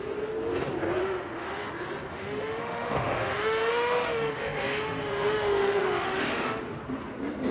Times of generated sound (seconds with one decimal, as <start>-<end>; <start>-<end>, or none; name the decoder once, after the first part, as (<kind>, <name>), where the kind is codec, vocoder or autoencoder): 1.0-1.7 (autoencoder, DAC-VAE); 2.1-6.6